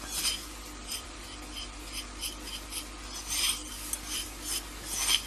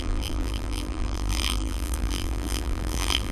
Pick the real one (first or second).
first